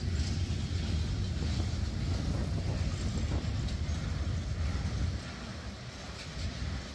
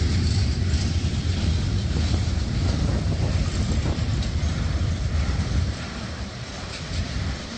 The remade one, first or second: second